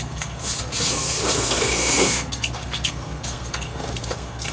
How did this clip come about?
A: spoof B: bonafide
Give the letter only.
A